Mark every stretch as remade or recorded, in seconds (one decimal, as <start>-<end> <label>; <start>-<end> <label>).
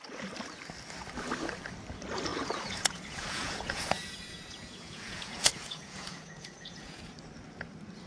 0.0-2.3 recorded; 2.3-7.1 remade; 7.1-8.1 recorded